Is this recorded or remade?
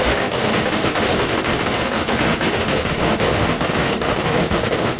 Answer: remade